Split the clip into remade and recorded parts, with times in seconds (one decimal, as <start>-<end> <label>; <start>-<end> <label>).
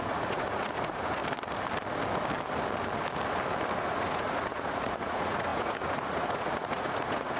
0.0-1.2 remade; 1.2-3.8 recorded; 3.8-7.4 remade